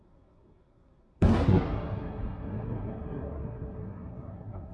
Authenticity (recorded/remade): remade